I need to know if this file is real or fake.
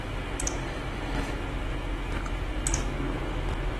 real